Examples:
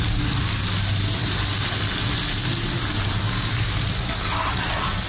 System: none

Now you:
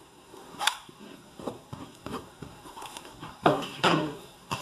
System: codec, SNAC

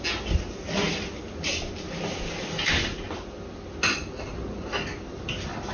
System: none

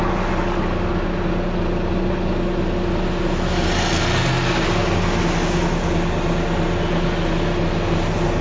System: none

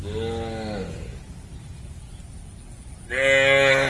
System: none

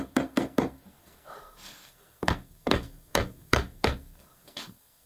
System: codec, SNAC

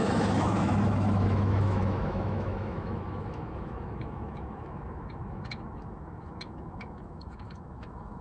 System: autoencoder, DAC-VAE